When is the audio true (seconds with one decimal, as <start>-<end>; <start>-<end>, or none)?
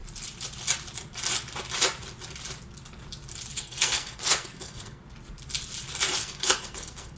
0.0-3.5; 5.0-6.2